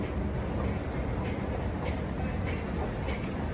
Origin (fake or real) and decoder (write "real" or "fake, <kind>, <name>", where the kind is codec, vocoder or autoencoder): real